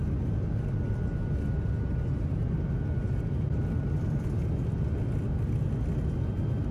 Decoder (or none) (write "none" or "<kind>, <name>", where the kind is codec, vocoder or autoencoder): none